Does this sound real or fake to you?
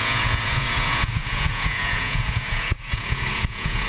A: fake